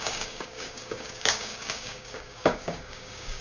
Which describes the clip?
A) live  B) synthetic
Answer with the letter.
B